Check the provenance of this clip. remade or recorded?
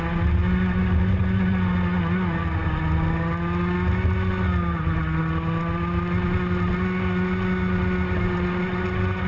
recorded